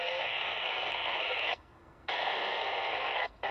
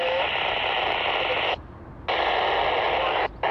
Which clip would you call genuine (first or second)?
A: second